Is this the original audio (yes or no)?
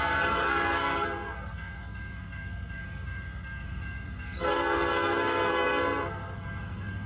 no